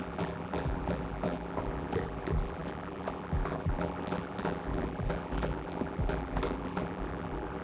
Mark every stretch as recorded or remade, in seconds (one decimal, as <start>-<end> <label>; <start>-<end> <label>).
0.0-7.6 remade